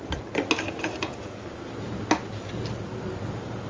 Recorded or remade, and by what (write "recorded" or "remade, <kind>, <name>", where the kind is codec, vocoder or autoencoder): recorded